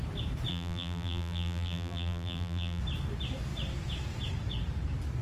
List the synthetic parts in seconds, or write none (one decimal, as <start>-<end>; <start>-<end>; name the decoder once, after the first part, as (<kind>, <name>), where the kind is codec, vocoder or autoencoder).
0.5-2.8 (vocoder, BigVGAN v2)